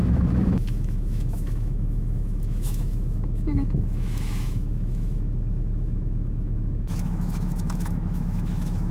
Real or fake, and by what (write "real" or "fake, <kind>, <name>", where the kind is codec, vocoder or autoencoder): fake, autoencoder, DAC-VAE